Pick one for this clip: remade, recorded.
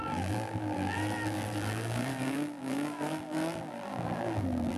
remade